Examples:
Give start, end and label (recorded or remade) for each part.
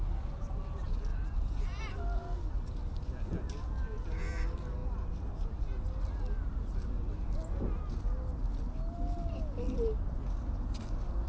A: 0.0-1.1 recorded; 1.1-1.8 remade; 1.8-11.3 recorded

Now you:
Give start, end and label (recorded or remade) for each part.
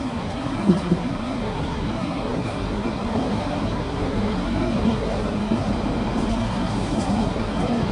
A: 0.0-5.7 remade; 5.7-6.3 recorded; 6.3-7.9 remade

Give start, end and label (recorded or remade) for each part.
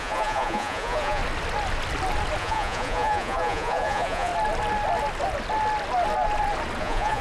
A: 0.0-1.2 remade; 1.2-2.4 recorded; 2.4-4.3 remade; 4.3-6.8 recorded; 6.8-7.2 remade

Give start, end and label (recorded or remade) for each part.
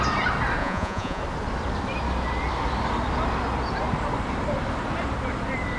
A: 0.0-0.6 recorded; 0.6-1.2 remade; 1.2-5.8 recorded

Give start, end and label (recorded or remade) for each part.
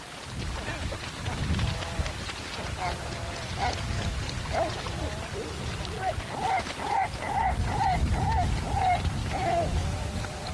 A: 0.0-9.2 recorded; 9.2-10.0 remade; 10.0-10.5 recorded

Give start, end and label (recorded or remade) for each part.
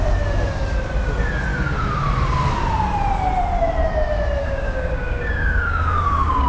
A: 0.0-4.4 recorded; 4.4-6.5 remade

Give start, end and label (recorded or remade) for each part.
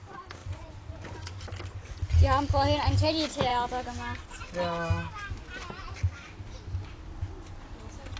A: 0.0-0.4 recorded; 0.4-1.5 remade; 1.5-8.2 recorded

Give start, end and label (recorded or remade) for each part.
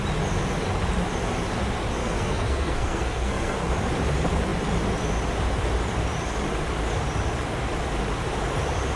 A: 0.0-2.0 recorded; 2.0-3.7 remade; 3.7-9.0 recorded